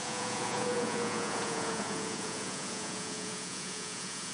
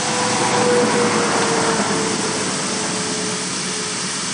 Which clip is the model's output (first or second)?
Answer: first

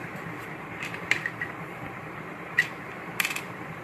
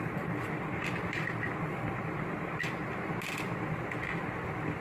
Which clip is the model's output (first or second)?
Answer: first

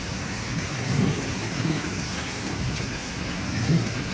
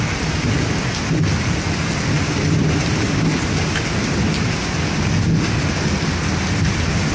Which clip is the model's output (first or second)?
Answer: first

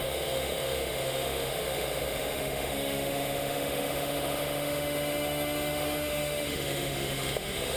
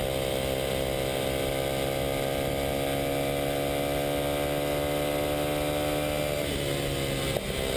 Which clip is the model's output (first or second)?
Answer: first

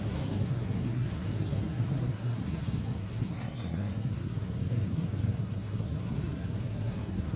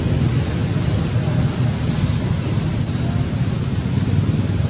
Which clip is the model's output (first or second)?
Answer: first